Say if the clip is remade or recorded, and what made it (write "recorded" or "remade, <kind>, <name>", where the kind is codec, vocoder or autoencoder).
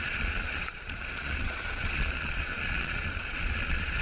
remade, vocoder, Vocos